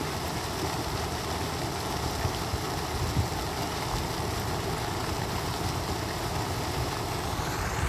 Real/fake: real